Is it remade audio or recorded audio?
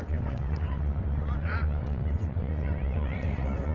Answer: remade